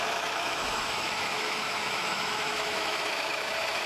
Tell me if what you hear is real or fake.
fake